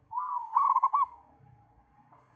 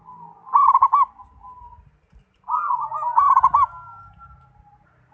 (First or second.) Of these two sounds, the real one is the second